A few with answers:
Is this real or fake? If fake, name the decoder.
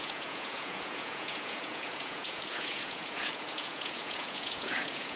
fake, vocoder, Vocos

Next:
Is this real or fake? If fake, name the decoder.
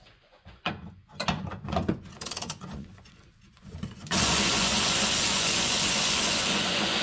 fake, vocoder, Vocos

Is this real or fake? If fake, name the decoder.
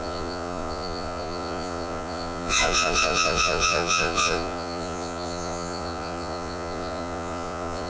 fake, vocoder, Vocos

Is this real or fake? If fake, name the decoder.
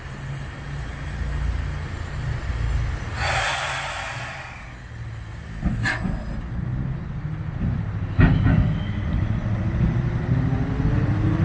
real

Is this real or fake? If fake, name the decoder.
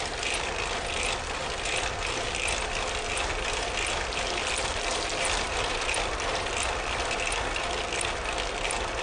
real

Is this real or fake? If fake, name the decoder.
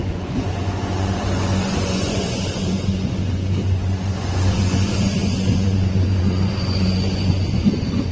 fake, vocoder, Vocos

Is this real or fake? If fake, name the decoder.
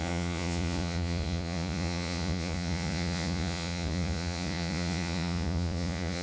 fake, vocoder, Vocos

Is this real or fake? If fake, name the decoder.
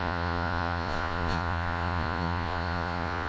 fake, vocoder, Vocos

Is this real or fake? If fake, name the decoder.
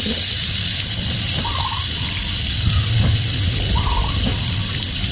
real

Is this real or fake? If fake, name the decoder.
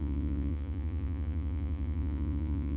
fake, vocoder, Vocos